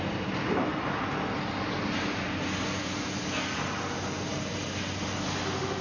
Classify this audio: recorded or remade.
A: recorded